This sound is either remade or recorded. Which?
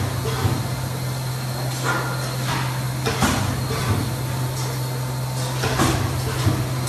recorded